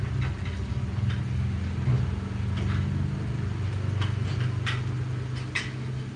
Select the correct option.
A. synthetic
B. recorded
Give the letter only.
B